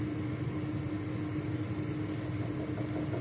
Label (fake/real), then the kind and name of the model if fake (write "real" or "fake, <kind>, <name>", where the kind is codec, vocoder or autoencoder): real